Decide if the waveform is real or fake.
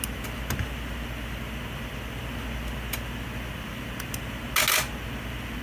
real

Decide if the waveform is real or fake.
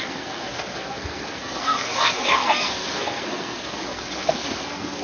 fake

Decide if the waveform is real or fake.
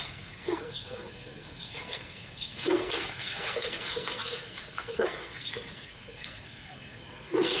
fake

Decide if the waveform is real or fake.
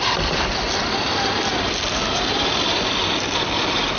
real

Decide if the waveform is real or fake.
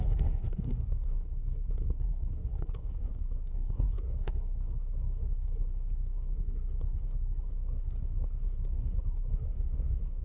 fake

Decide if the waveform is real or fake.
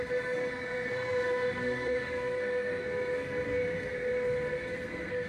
fake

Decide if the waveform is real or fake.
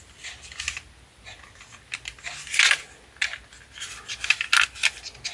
real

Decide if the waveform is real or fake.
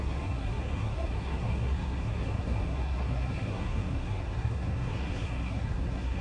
fake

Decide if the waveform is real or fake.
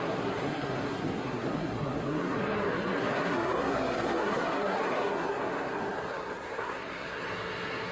fake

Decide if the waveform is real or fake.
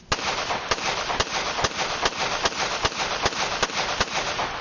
real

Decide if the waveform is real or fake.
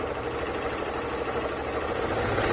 real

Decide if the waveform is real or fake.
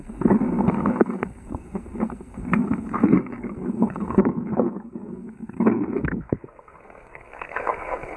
fake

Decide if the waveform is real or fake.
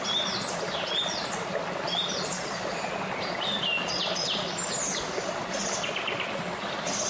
real